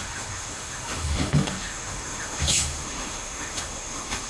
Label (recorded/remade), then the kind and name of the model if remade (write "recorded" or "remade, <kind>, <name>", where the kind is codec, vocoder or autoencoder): remade, autoencoder, DAC-VAE